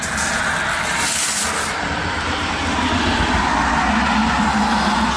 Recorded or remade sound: recorded